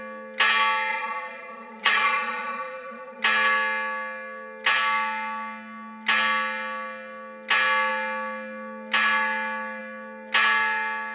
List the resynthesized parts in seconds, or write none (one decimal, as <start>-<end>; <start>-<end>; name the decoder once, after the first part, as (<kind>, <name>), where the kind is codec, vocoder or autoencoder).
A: 0.9-3.2 (vocoder, Vocos)